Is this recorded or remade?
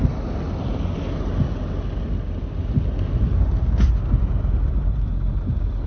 recorded